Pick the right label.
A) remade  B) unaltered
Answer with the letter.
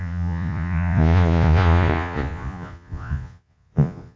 A